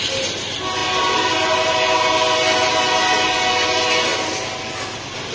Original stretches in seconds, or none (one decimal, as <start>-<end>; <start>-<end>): 0.0-5.3